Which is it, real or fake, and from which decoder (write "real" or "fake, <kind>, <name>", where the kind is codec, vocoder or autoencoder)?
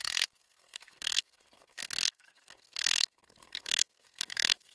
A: fake, codec, SNAC